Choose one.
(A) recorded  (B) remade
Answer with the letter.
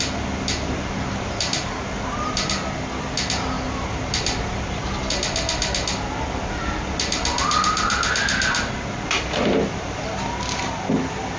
A